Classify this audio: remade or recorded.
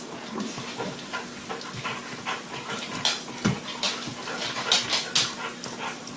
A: recorded